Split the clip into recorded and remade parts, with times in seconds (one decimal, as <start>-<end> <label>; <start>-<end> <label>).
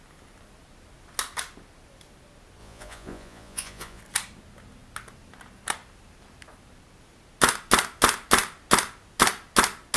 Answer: 0.0-2.6 recorded; 2.6-4.0 remade; 4.0-10.0 recorded